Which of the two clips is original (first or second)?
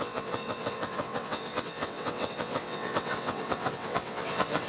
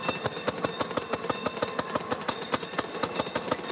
second